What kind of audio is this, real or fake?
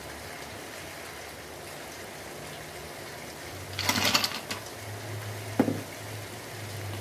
real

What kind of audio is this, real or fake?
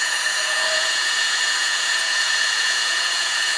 fake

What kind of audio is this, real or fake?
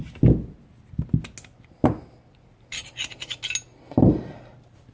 real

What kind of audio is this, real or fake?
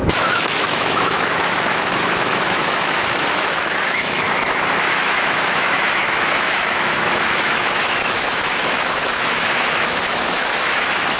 fake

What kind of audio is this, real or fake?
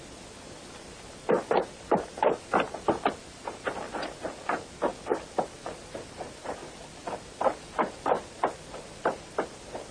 real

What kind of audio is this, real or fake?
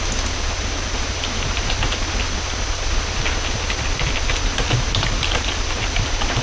real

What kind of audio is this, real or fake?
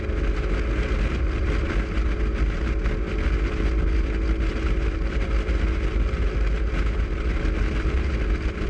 real